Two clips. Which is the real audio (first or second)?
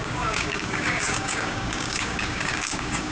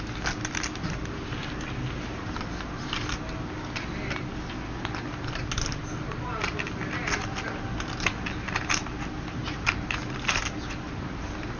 second